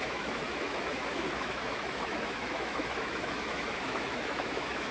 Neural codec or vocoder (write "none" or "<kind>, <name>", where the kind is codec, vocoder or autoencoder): autoencoder, DAC-VAE